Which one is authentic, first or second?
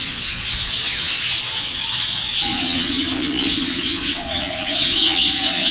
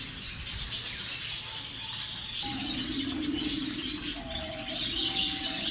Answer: second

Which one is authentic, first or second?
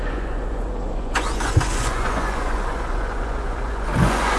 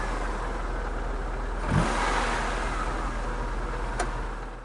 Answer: second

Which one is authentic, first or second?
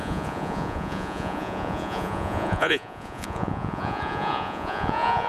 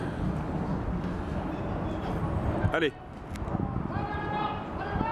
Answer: second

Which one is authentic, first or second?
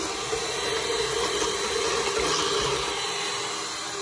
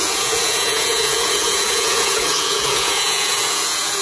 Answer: first